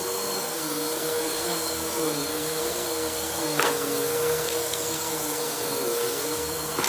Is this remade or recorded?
remade